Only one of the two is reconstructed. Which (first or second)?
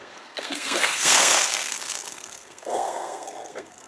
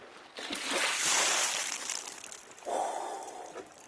first